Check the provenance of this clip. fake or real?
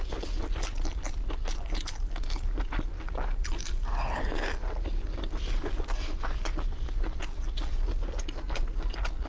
real